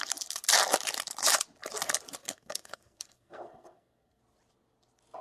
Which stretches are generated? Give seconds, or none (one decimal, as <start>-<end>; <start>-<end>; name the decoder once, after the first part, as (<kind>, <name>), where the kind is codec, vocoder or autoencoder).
2.2-4.2 (codec, SNAC)